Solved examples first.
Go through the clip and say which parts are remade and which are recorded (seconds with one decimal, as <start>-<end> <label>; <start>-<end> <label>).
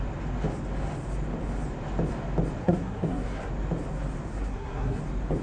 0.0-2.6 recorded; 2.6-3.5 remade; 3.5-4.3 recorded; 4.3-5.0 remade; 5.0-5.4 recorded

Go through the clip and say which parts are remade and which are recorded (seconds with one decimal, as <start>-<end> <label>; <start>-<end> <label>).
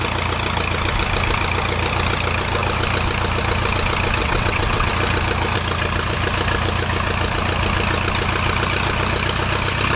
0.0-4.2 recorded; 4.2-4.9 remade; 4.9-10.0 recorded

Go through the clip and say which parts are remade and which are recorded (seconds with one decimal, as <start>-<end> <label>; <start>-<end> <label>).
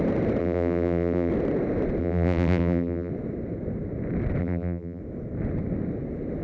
0.0-0.4 recorded; 0.4-1.3 remade; 1.3-2.0 recorded; 2.0-3.1 remade; 3.1-4.4 recorded; 4.4-5.0 remade; 5.0-6.4 recorded